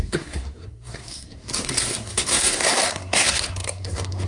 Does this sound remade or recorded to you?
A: remade